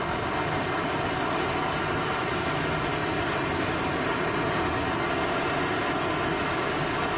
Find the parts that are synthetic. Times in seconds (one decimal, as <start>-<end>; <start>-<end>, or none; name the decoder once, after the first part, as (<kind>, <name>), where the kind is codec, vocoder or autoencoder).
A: none